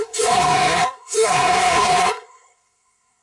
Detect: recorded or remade remade